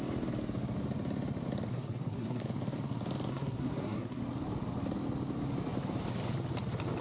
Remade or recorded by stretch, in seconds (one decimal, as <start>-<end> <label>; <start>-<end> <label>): 0.0-1.7 recorded; 1.7-2.4 remade; 2.4-3.3 recorded; 3.3-4.2 remade; 4.2-7.0 recorded